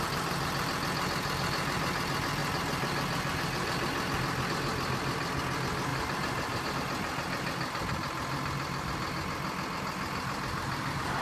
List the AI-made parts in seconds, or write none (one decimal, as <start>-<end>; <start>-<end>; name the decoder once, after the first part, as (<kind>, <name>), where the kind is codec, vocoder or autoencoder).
5.9-6.7 (vocoder, BigVGAN v2)